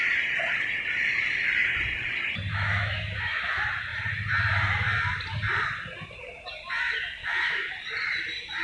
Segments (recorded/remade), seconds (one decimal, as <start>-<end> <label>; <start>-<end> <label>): 0.0-2.5 recorded; 2.5-3.3 remade; 3.3-7.2 recorded; 7.2-7.7 remade; 7.7-8.6 recorded